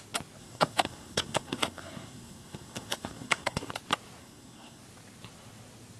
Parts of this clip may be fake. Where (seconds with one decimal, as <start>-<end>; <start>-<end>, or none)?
0.4-3.7; 4.2-4.8